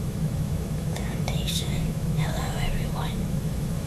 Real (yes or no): no